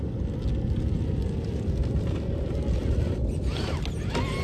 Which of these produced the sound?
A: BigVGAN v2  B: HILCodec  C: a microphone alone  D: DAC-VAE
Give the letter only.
C